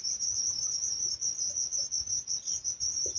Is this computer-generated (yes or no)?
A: no